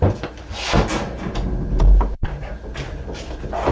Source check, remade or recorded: recorded